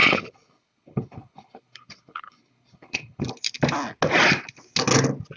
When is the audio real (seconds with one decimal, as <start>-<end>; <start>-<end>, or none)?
3.2-5.4